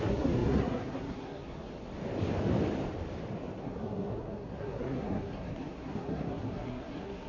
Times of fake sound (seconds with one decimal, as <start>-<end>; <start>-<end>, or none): 0.0-1.7; 3.6-7.3